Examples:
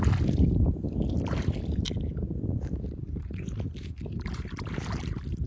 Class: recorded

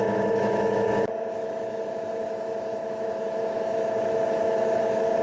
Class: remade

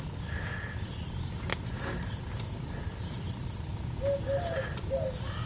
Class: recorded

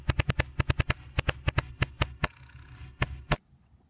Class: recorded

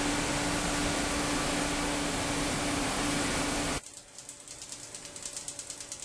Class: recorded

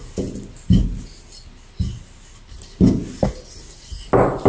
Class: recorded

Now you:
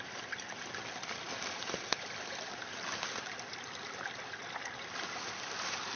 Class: recorded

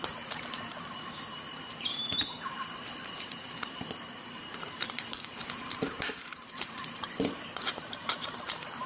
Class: remade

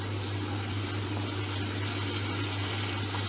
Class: recorded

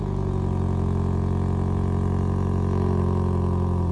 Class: recorded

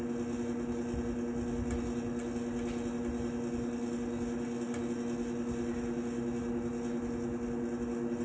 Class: recorded